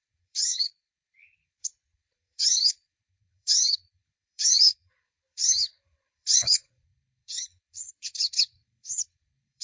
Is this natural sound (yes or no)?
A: no